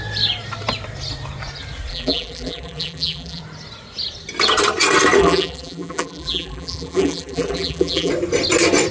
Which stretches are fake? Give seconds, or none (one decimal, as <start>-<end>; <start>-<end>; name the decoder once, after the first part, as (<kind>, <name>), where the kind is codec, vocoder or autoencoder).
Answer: 1.9-3.4 (vocoder, BigVGAN v2); 5.2-8.1